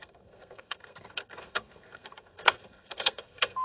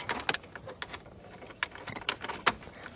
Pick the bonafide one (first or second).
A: second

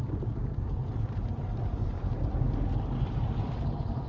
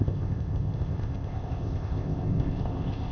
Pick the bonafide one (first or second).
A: first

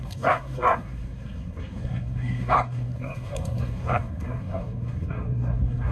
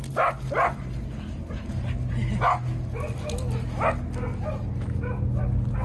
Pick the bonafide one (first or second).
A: second